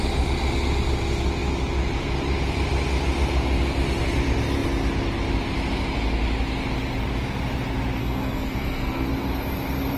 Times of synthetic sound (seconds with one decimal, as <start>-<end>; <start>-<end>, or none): 8.0-9.1